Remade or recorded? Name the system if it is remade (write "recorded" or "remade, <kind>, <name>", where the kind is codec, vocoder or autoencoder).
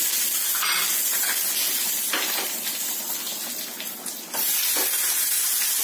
recorded